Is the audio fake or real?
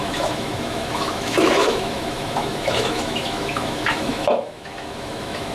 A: fake